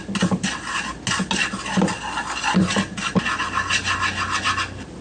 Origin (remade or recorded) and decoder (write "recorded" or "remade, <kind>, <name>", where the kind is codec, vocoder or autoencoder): recorded